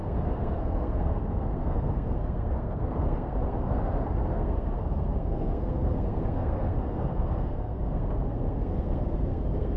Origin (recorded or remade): remade